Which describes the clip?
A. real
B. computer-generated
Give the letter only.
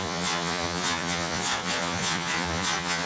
B